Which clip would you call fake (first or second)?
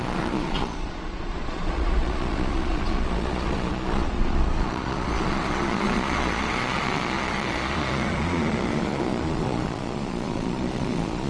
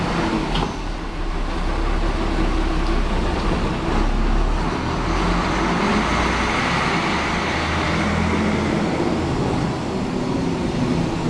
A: first